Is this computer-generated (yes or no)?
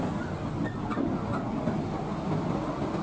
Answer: no